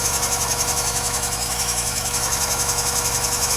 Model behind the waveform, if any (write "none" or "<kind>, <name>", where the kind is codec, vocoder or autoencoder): autoencoder, DAC-VAE